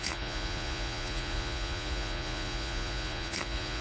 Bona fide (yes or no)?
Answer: no